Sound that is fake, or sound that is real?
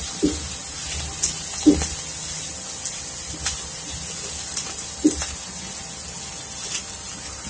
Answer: real